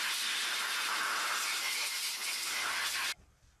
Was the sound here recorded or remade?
recorded